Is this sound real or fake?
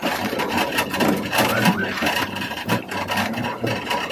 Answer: fake